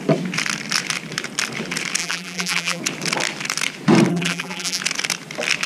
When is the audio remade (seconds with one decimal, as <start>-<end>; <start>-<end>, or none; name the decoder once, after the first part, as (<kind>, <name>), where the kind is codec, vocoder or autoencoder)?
2.0-2.8 (vocoder, BigVGAN v2); 4.1-4.8